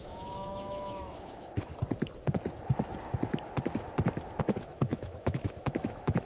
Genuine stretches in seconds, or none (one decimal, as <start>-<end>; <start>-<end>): 1.7-4.4

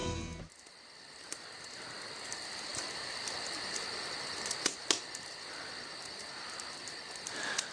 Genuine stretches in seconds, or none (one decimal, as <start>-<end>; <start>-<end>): 0.0-7.7

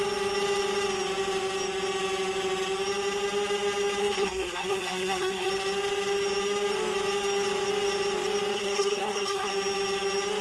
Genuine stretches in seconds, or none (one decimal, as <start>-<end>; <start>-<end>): 0.0-4.0; 5.5-8.5; 9.5-10.4

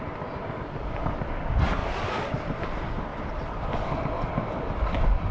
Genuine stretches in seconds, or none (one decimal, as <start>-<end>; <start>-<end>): 0.0-1.8; 2.7-5.3

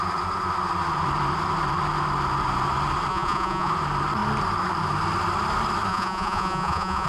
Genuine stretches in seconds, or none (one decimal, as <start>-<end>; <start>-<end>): 0.0-3.1; 3.7-5.9

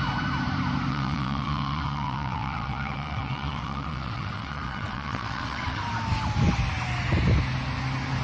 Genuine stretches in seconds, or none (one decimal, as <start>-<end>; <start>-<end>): 0.0-0.9; 5.8-8.2

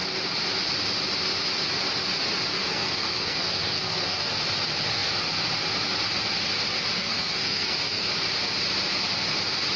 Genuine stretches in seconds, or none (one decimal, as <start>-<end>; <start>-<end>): 0.0-2.5; 4.4-7.0; 8.1-9.8